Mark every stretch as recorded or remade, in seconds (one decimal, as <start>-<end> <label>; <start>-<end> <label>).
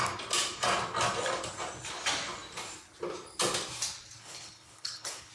0.0-4.2 recorded; 4.2-5.3 remade